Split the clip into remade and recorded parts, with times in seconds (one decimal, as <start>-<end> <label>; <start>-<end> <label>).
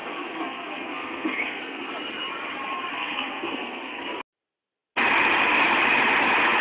0.0-1.9 remade; 1.9-2.9 recorded; 2.9-4.0 remade; 4.0-6.6 recorded